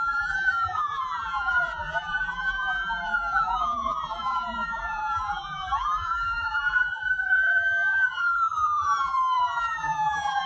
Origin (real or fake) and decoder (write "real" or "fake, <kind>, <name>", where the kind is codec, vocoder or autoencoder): fake, vocoder, BigVGAN v2